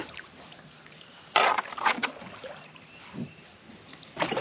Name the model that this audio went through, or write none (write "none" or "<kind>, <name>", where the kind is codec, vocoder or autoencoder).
vocoder, BigVGAN v2